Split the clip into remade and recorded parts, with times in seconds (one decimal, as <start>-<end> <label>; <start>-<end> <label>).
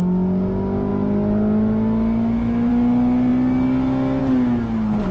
0.0-5.1 recorded